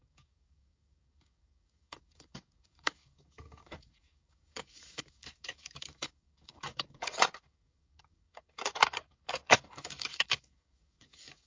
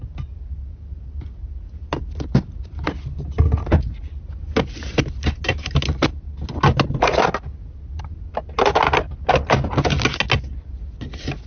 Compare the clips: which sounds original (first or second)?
second